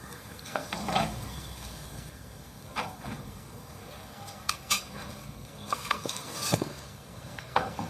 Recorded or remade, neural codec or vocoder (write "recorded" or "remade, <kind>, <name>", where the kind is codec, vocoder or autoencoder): remade, codec, SNAC